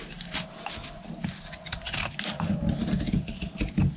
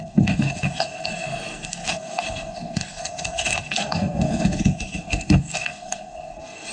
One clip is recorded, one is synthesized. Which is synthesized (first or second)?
second